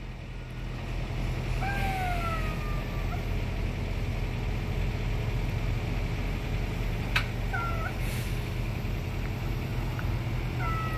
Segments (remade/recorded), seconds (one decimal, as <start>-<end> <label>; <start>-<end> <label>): 0.0-11.0 recorded